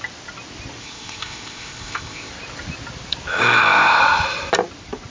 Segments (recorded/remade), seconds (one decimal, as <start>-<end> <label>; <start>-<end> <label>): 0.0-0.8 recorded; 0.8-2.3 remade; 2.3-3.3 recorded; 3.3-4.0 remade; 4.0-5.1 recorded